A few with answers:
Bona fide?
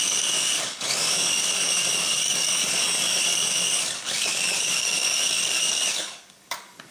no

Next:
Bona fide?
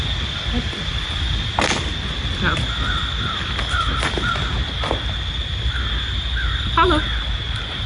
yes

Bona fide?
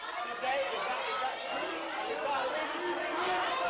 yes